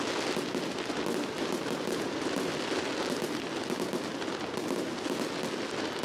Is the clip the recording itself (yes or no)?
yes